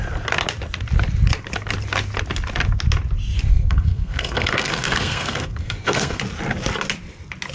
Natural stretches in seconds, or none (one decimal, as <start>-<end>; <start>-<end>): 0.0-3.5; 6.2-7.5